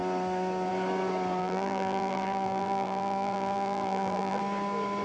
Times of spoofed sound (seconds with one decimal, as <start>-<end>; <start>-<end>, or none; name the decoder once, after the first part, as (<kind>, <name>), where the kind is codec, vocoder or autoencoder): 1.4-4.4 (vocoder, BigVGAN v2)